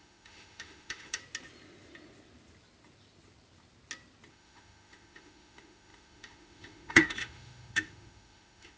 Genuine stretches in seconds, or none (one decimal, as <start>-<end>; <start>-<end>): 1.2-4.3